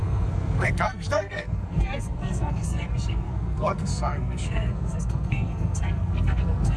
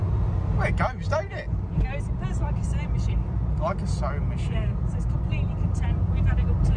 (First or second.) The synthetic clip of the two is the first